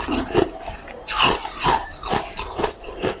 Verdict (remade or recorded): recorded